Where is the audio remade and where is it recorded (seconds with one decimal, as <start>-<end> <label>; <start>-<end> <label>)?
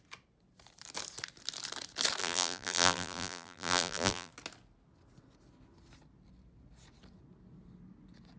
0.0-2.2 recorded; 2.2-4.3 remade; 4.3-8.4 recorded